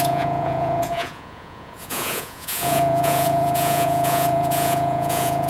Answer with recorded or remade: remade